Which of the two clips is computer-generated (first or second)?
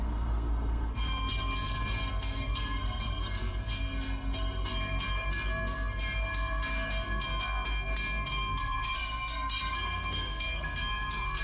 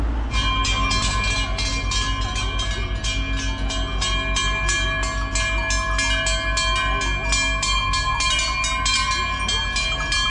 first